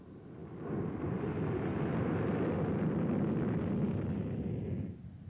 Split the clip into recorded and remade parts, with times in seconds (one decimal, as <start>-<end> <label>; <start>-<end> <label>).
0.0-5.3 recorded